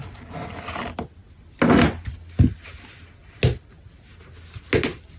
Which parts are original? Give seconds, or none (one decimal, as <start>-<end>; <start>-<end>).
0.0-5.2

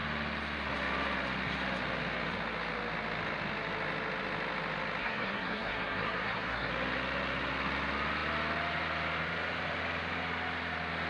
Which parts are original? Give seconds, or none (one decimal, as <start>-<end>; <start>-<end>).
0.0-5.0; 6.7-11.1